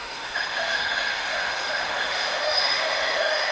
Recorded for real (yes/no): no